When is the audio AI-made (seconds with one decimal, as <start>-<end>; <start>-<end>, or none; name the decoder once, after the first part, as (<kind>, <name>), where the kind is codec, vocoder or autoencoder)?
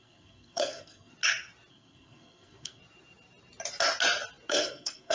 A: 0.0-1.1 (codec, SNAC); 1.7-2.8; 4.5-5.1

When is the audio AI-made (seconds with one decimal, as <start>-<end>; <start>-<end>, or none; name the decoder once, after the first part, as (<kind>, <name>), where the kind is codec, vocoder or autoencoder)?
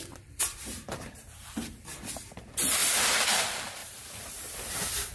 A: 0.5-2.0 (vocoder, BigVGAN v2); 2.8-3.4; 3.8-5.1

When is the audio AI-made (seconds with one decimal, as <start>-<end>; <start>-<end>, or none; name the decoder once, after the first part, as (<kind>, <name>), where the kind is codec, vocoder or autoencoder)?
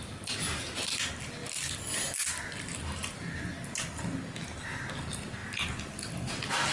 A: none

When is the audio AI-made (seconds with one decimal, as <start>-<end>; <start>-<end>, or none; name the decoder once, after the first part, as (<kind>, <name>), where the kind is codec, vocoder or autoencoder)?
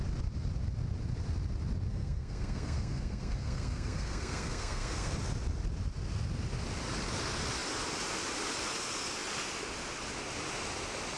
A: 1.9-5.1 (codec, SNAC)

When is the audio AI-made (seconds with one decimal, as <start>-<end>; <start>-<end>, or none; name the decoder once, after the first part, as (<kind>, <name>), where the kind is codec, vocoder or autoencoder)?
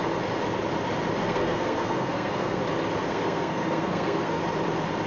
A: 1.2-2.6 (codec, SNAC); 3.1-4.4